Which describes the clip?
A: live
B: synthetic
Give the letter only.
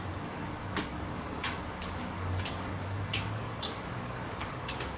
B